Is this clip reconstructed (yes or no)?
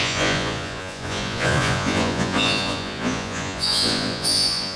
yes